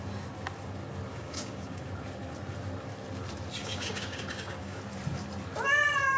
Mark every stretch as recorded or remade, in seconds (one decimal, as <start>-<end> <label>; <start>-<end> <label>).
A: 0.0-1.1 recorded; 1.1-1.8 remade; 1.8-3.6 recorded; 3.6-4.8 remade; 4.8-6.2 recorded